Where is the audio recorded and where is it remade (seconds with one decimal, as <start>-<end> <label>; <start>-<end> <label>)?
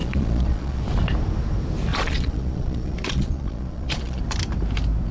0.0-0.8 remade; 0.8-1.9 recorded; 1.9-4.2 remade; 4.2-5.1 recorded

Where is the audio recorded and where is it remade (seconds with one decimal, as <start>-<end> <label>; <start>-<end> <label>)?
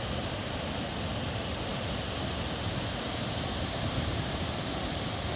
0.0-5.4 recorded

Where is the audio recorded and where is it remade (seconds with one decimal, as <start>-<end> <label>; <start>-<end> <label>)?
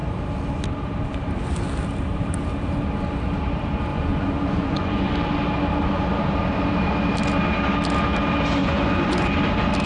0.0-3.9 recorded; 3.9-5.1 remade; 5.1-8.6 recorded; 8.6-9.3 remade; 9.3-9.9 recorded